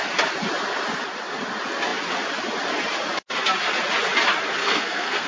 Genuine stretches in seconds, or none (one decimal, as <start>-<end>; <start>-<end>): 0.0-4.6